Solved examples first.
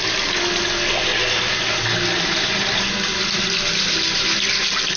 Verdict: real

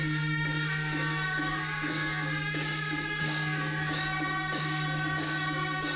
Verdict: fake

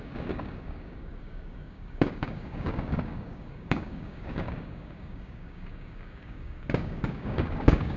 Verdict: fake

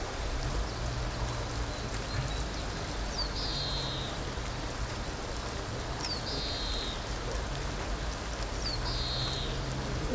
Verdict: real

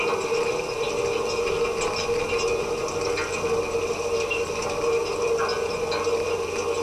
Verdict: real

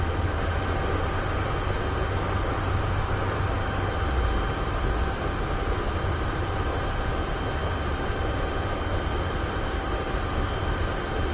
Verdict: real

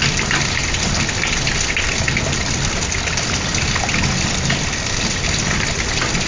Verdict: real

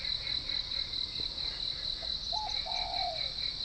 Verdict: real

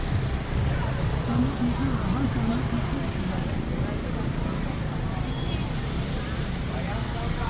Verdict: real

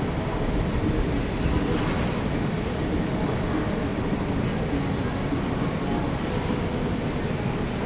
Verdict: real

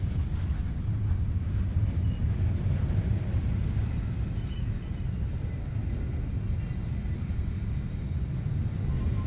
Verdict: real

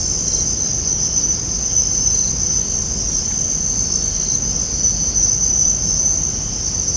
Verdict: real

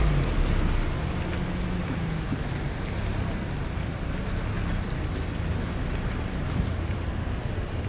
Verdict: real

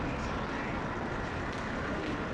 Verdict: real